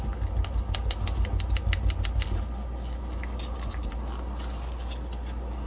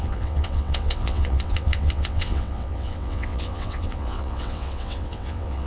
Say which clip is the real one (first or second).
first